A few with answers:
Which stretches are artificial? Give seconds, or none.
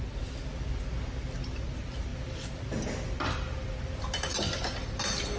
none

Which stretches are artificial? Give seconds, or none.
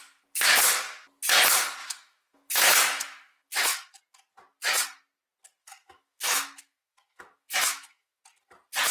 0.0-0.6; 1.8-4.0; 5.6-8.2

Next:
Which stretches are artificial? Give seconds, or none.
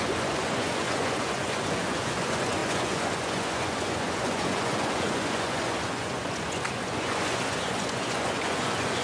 0.0-9.0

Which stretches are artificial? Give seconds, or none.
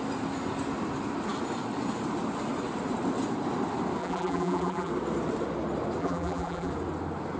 4.0-4.9; 6.0-6.7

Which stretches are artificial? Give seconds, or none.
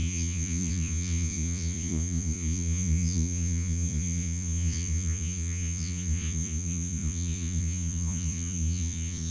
0.0-9.3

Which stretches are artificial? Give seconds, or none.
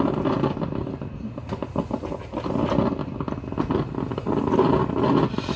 none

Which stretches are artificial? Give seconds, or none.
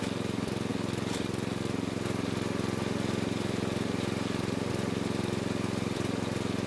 none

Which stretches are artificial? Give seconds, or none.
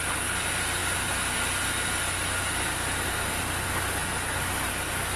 none